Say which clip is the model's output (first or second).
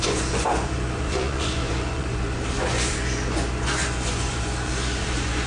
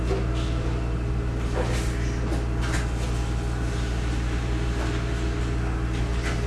first